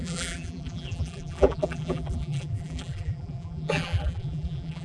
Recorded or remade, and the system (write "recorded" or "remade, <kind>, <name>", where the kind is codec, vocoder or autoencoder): remade, vocoder, BigVGAN v2